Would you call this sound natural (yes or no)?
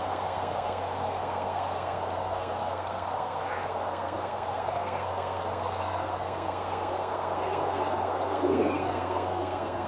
no